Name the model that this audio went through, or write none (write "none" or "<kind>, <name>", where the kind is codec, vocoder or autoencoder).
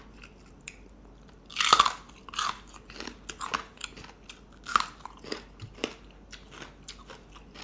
none